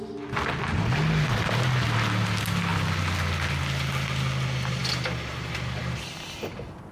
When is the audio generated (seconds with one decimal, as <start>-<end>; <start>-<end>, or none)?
none